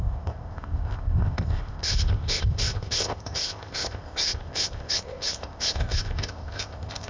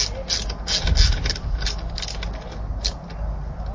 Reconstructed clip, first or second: first